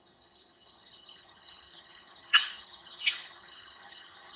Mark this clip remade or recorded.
remade